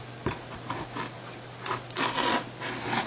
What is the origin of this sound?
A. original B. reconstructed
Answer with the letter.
A